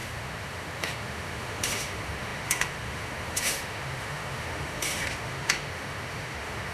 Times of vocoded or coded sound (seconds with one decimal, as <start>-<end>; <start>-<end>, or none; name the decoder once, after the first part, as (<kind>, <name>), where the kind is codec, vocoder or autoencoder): 0.0-6.7 (autoencoder, DAC-VAE)